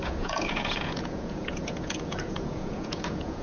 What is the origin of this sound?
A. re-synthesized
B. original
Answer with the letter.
A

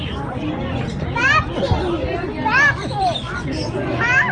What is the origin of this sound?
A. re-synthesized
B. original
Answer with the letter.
B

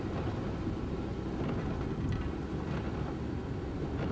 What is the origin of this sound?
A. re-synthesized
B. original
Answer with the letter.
B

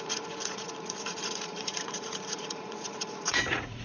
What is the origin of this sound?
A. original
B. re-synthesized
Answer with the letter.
B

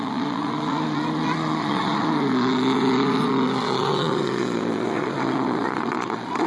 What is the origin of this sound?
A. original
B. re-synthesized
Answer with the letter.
B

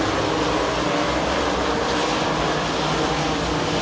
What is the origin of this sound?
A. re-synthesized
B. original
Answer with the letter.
B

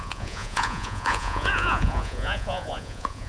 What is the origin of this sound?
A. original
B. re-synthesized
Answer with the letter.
B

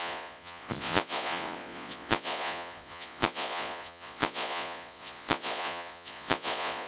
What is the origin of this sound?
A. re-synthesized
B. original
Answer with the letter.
A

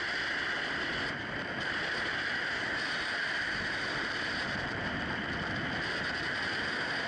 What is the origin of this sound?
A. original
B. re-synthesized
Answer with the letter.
A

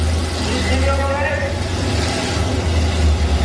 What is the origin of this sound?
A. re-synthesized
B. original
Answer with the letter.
B